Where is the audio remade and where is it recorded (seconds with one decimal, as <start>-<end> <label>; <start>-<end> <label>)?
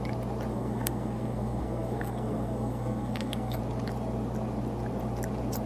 0.0-0.5 recorded; 0.5-3.6 remade; 3.6-5.7 recorded